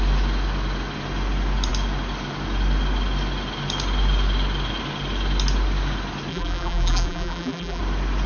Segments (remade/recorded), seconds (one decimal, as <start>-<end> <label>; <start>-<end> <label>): 0.0-6.3 recorded; 6.3-7.8 remade; 7.8-8.3 recorded